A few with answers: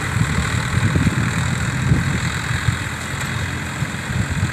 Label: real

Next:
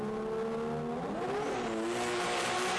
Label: real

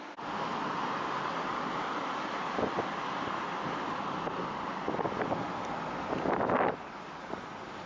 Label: real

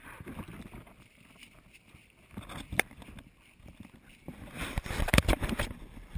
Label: real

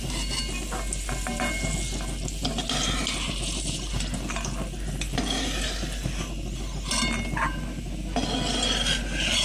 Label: real